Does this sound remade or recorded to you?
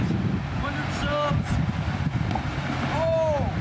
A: recorded